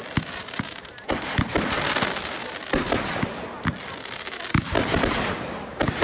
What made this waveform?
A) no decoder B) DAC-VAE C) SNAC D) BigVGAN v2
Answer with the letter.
D